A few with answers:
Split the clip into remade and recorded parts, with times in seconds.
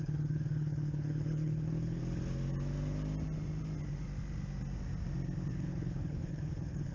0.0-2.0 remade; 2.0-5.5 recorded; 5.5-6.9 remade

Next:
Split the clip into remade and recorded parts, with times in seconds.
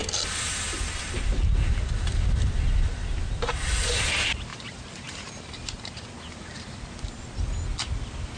0.0-4.5 recorded; 4.5-5.8 remade; 5.8-8.4 recorded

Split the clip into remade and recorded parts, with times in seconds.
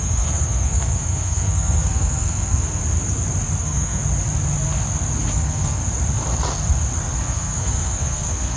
0.0-2.8 remade; 2.8-3.6 recorded; 3.6-4.0 remade; 4.0-5.3 recorded; 5.3-5.8 remade; 5.8-7.2 recorded; 7.2-8.6 remade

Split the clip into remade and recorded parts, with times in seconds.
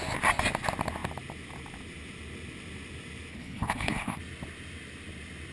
0.0-3.3 recorded; 3.3-4.2 remade; 4.2-5.5 recorded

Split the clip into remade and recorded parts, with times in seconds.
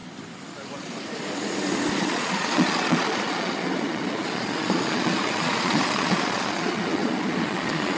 0.0-2.0 recorded; 2.0-8.0 remade